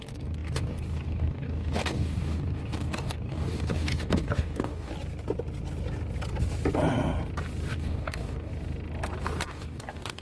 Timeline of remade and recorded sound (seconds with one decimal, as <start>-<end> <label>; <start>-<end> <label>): 0.0-4.9 remade; 4.9-7.7 recorded; 7.7-8.5 remade; 8.5-9.5 recorded; 9.5-10.2 remade